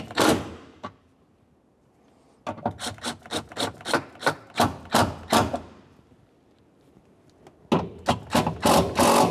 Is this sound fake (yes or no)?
no